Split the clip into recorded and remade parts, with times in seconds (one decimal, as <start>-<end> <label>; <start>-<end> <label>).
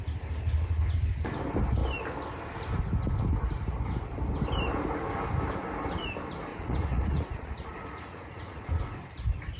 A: 0.0-6.5 recorded; 6.5-8.8 remade; 8.8-9.6 recorded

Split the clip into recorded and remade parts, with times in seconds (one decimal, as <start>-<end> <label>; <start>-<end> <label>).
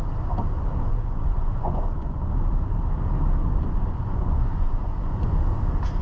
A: 0.0-0.9 recorded; 0.9-2.3 remade; 2.3-3.4 recorded; 3.4-5.3 remade; 5.3-6.0 recorded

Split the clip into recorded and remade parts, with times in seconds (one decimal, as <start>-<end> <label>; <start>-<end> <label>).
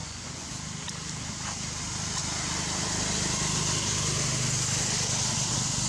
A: 0.0-0.5 remade; 0.5-5.9 recorded